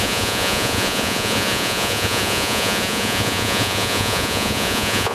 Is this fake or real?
fake